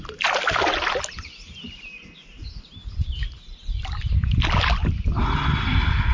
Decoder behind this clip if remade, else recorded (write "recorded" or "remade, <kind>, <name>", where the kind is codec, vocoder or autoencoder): recorded